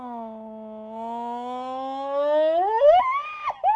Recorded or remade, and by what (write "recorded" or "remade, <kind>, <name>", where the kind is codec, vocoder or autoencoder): recorded